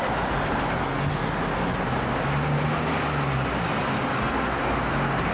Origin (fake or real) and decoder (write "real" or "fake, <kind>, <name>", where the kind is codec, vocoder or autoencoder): real